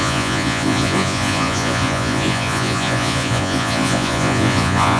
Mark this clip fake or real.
fake